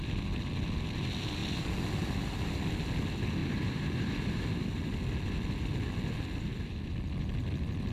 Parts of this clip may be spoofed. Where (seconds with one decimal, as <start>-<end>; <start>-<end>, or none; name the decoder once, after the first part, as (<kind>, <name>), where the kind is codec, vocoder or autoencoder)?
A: 3.4-4.1 (vocoder, BigVGAN v2)